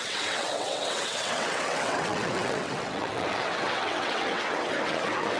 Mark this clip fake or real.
fake